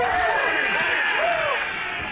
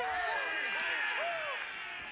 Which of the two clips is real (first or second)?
second